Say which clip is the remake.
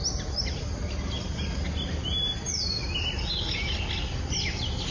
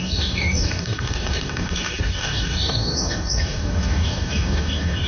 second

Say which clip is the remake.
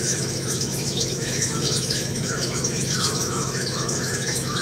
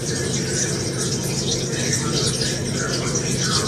first